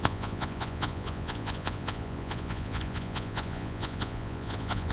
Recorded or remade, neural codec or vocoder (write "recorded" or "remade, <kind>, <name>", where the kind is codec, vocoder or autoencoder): remade, vocoder, Vocos